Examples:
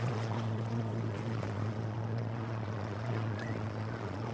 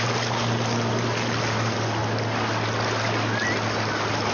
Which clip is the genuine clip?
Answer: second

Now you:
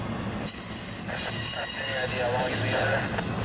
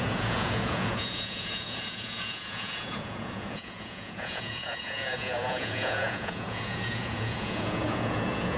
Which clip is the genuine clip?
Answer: first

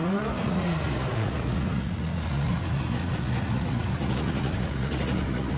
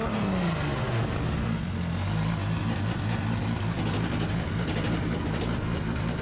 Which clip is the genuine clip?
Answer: second